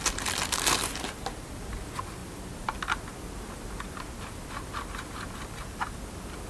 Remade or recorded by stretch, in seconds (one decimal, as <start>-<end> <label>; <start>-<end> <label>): 0.0-6.5 recorded